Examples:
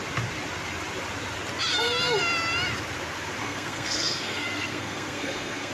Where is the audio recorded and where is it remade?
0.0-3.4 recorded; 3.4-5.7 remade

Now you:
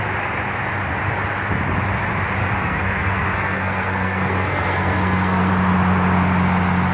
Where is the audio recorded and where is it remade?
0.0-2.4 recorded; 2.4-5.5 remade; 5.5-6.9 recorded

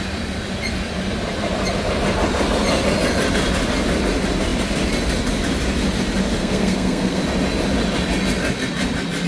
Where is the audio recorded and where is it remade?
0.0-6.4 recorded; 6.4-7.2 remade; 7.2-9.3 recorded

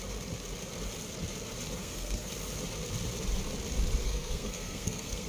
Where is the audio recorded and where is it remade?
0.0-1.8 recorded; 1.8-2.3 remade; 2.3-4.0 recorded; 4.0-5.3 remade